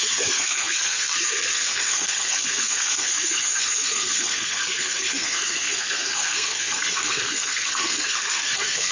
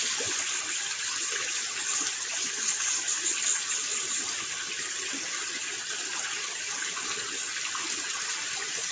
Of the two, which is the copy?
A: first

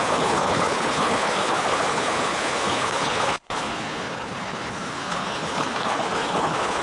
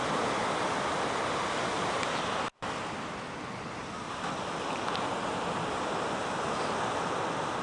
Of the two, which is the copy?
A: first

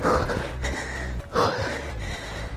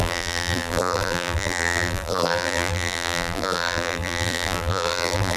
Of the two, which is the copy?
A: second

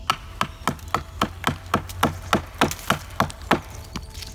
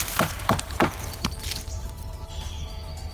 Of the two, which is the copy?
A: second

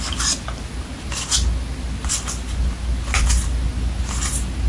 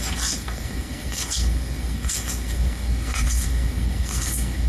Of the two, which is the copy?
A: second